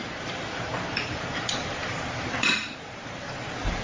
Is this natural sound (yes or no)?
no